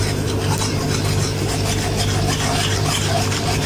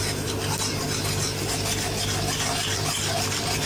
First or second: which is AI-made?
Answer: first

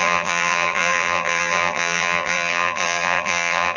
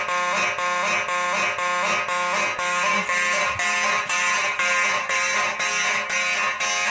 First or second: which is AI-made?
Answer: first